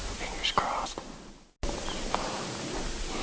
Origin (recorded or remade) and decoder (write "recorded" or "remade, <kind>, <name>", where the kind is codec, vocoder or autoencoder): recorded